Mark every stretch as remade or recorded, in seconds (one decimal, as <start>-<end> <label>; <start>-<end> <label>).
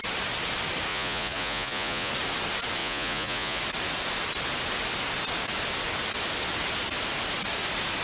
0.0-0.9 recorded; 0.9-2.1 remade; 2.1-2.8 recorded; 2.8-3.6 remade; 3.6-8.0 recorded